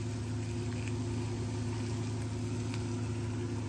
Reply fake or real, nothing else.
real